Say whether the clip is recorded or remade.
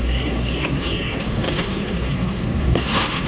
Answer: remade